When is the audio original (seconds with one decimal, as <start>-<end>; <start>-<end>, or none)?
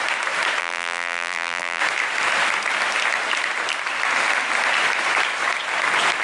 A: 0.0-0.6; 1.8-6.2